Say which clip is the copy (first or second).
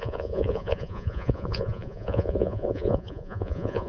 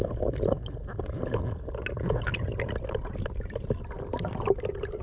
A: first